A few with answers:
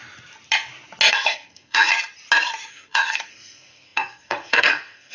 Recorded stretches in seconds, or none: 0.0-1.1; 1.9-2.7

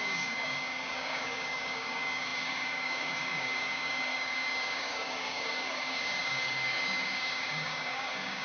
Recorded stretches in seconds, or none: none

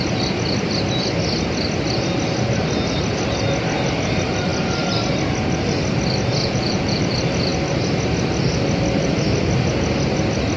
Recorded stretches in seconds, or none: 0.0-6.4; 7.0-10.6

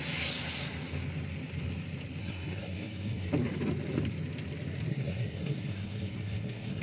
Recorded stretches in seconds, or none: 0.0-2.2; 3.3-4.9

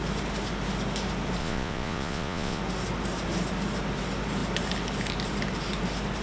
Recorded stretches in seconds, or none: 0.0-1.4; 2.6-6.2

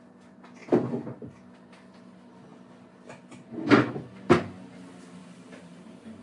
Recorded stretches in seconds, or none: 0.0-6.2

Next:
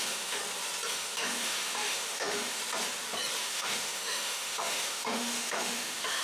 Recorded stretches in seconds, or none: 0.4-0.9; 2.6-3.4

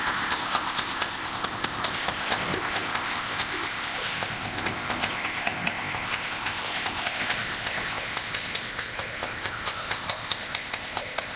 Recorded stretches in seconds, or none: none